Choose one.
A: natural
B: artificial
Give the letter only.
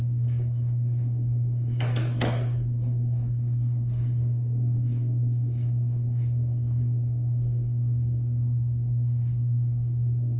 B